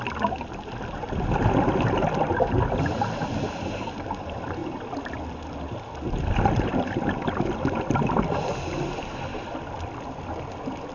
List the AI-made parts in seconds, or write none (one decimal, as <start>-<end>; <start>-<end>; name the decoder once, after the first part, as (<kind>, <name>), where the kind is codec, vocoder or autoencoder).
none